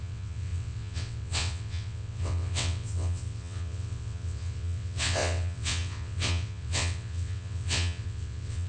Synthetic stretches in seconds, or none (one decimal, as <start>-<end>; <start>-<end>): 0.0-8.7